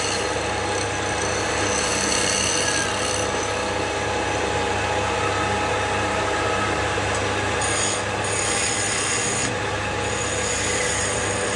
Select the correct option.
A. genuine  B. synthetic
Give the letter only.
A